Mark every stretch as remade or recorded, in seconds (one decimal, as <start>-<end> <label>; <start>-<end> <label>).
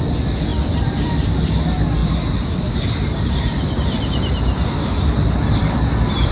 0.0-0.5 recorded; 0.5-1.1 remade; 1.1-6.3 recorded